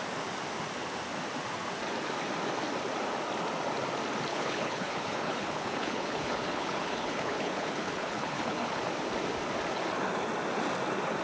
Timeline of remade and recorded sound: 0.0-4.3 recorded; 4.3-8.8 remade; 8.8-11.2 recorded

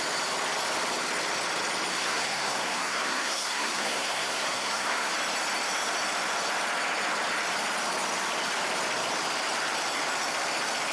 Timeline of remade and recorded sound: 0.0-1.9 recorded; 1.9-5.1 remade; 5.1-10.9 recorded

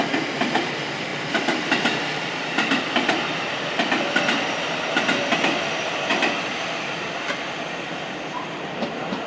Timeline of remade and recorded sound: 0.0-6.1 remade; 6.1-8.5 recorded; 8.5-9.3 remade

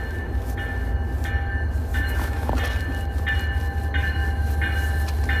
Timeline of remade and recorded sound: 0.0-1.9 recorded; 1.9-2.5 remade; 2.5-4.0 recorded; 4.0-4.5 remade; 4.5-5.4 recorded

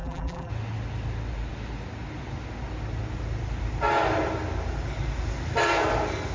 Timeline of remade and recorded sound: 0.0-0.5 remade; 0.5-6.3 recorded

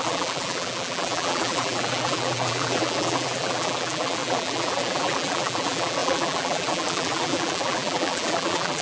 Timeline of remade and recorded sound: 0.0-8.8 remade